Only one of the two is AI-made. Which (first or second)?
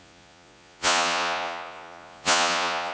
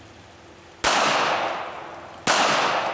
first